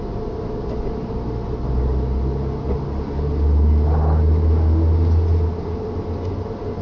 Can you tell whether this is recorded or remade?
recorded